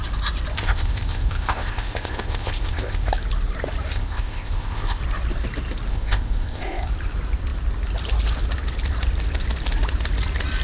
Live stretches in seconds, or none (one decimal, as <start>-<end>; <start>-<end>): 0.0-0.5; 3.1-3.9; 5.0-5.9; 6.9-10.6